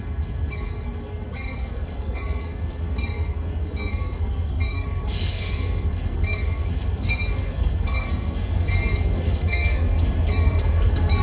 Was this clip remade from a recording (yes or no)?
yes